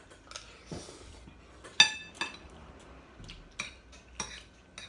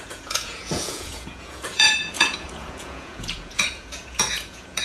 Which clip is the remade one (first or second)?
second